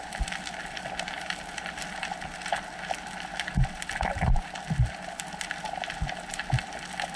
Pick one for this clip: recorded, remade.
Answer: recorded